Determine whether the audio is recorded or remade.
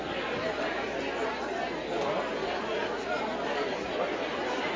recorded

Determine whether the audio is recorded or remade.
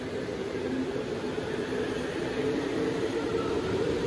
remade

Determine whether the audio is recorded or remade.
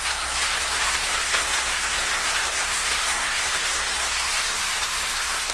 remade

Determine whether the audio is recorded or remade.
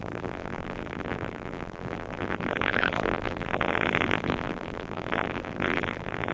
remade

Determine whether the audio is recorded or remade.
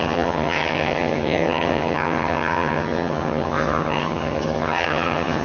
remade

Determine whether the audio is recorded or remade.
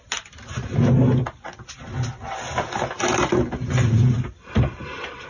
recorded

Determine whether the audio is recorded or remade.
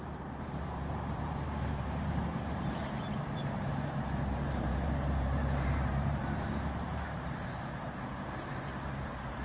remade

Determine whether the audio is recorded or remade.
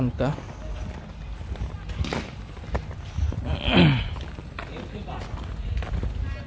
recorded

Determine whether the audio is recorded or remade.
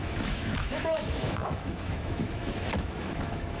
remade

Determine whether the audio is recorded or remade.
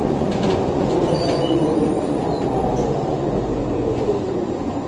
remade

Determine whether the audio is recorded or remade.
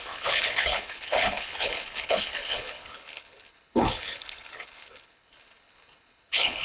remade